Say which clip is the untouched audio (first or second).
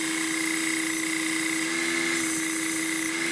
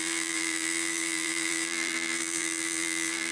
first